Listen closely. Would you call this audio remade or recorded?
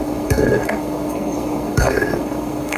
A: remade